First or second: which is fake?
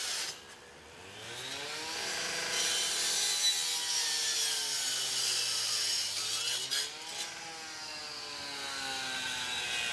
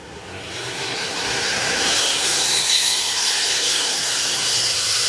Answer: second